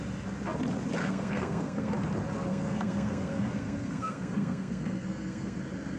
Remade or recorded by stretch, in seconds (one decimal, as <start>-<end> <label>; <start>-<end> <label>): 0.0-1.0 recorded; 1.0-1.9 remade; 1.9-2.5 recorded; 2.5-5.6 remade; 5.6-6.0 recorded